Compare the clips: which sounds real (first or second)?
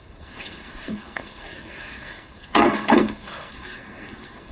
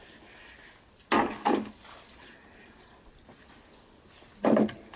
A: second